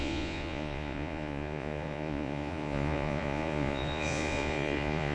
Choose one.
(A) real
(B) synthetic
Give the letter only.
B